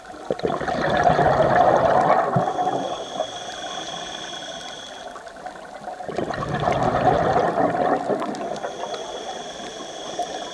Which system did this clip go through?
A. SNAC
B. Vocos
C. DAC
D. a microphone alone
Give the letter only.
D